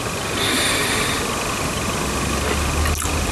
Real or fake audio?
real